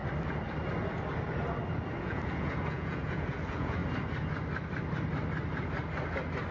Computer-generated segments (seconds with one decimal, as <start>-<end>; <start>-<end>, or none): 2.0-3.8